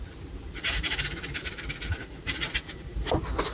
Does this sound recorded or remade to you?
remade